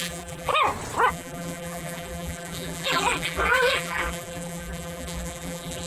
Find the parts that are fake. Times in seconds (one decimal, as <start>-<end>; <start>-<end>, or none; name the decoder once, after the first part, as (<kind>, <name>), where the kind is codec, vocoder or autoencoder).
0.0-0.5 (vocoder, BigVGAN v2); 1.1-5.9